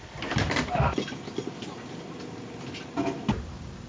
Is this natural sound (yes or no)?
no